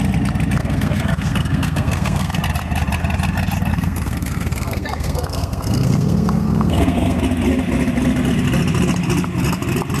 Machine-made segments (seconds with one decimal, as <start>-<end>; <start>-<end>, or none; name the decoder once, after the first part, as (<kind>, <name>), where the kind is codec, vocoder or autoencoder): 0.6-2.4 (codec, SNAC); 3.7-7.2

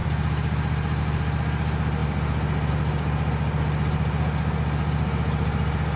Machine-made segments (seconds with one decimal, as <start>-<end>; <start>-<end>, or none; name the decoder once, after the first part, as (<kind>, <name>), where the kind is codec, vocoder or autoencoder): none

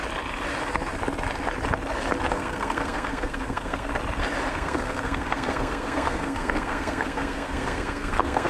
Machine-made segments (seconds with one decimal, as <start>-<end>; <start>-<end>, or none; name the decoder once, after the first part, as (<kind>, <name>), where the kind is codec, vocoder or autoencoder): 2.3-3.9 (codec, SNAC); 4.5-8.5

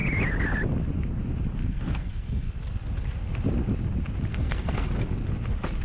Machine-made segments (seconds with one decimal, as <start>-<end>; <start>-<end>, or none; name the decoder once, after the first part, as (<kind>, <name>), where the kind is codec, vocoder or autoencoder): 1.6-2.5 (codec, SNAC); 4.3-4.9

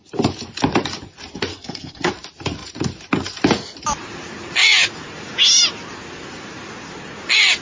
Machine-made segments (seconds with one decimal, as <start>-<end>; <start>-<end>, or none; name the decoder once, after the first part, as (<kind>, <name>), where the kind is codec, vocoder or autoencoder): 1.5-2.1 (codec, SNAC)